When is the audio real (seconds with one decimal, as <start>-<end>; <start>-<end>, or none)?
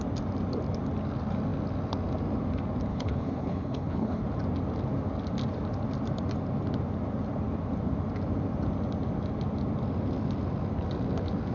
0.0-2.9; 4.2-11.5